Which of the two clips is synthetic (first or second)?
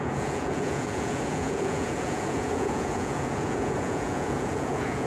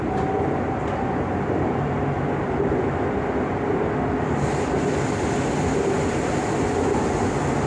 first